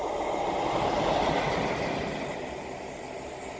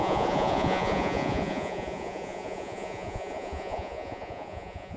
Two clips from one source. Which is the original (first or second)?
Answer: first